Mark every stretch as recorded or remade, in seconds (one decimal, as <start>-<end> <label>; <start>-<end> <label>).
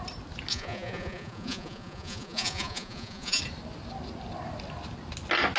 0.0-0.5 recorded; 0.5-3.4 remade; 3.4-5.6 recorded